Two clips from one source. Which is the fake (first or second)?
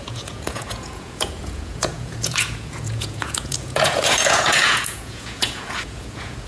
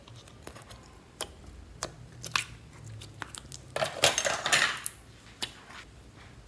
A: first